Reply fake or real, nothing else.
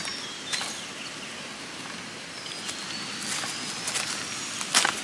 real